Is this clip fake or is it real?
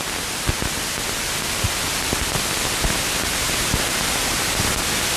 real